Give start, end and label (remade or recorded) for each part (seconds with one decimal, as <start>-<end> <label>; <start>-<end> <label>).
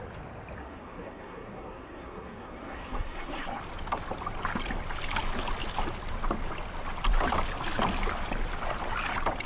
0.0-0.6 recorded; 0.6-3.6 remade; 3.6-9.5 recorded